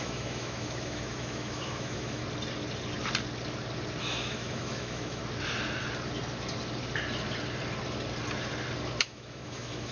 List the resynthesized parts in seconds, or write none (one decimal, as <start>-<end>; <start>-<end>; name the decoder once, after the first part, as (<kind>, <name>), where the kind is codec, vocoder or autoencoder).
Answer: 0.0-2.2 (autoencoder, DAC-VAE); 4.0-5.2; 9.0-9.9